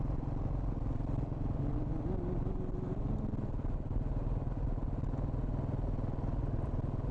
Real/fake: real